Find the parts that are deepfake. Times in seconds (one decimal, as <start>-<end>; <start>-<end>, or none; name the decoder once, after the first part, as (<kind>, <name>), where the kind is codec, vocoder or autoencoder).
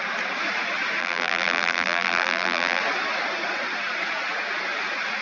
1.0-2.8 (vocoder, BigVGAN v2)